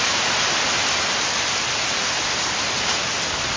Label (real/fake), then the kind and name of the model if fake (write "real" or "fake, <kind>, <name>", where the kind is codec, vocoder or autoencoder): real